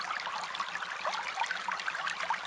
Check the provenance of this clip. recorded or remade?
recorded